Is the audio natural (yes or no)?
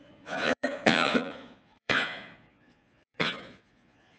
no